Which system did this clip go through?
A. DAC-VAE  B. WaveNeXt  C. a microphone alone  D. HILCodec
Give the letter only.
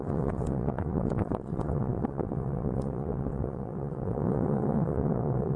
B